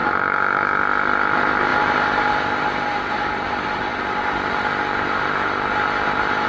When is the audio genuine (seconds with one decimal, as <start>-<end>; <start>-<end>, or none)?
0.8-6.5